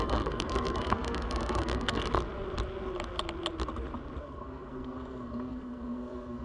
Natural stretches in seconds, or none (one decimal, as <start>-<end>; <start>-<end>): 2.0-4.2